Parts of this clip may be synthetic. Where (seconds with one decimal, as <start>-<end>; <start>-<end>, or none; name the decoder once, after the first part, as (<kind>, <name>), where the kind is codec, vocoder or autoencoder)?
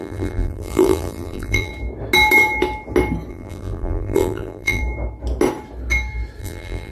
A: 0.0-1.7 (vocoder, BigVGAN v2); 3.3-4.8; 6.4-6.9